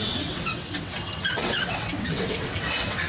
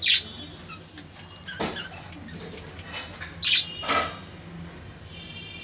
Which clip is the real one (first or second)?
second